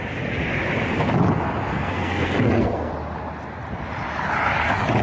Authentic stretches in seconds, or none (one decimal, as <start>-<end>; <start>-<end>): 0.0-1.7; 2.9-5.0

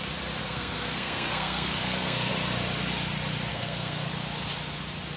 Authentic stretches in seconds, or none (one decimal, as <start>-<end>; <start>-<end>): 0.0-0.4; 2.3-3.5; 4.1-5.2